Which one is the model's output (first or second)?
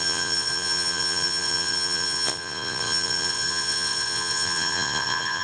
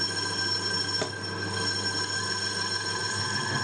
first